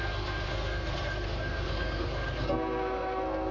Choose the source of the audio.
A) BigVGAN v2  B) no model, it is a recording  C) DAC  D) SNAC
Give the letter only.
D